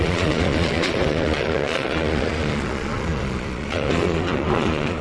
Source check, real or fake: fake